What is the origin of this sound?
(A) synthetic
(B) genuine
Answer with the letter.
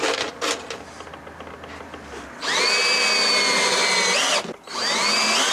B